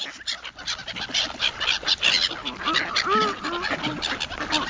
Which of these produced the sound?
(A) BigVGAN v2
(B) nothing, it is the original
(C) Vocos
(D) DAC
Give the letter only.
B